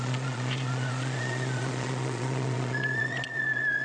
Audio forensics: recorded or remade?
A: remade